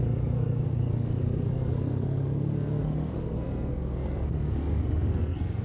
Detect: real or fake fake